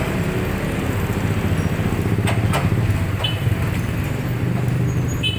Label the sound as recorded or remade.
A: recorded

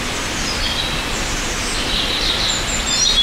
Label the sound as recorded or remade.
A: recorded